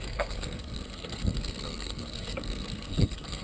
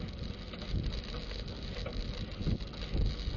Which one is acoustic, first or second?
second